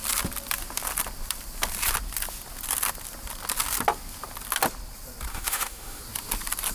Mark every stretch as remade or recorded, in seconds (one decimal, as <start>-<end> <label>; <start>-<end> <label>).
0.0-5.3 recorded; 5.3-6.0 remade; 6.0-6.7 recorded